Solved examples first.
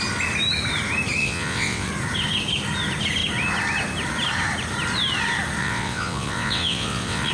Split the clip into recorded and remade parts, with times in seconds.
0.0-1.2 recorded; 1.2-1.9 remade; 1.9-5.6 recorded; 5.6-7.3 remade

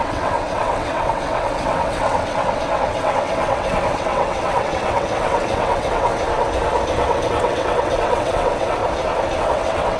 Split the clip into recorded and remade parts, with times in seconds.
0.0-6.1 remade; 6.1-7.0 recorded; 7.0-8.8 remade; 8.8-9.4 recorded; 9.4-10.0 remade

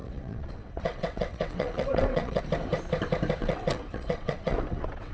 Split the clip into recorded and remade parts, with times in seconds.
0.0-2.4 remade; 2.4-3.4 recorded; 3.4-5.1 remade

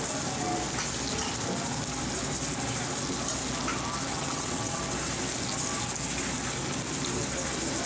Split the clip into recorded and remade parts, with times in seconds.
0.0-4.1 recorded; 4.1-4.8 remade; 4.8-7.9 recorded

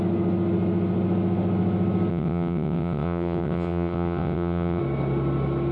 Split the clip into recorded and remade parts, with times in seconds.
0.0-2.1 recorded; 2.1-4.8 remade; 4.8-5.7 recorded